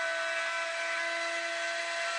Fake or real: real